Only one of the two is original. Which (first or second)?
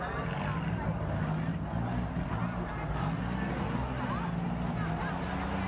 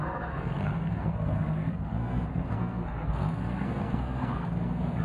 first